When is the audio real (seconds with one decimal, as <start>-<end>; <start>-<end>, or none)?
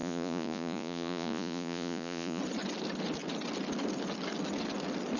2.4-5.2